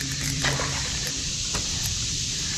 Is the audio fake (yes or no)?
yes